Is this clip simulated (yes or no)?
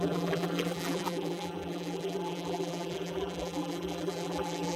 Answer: yes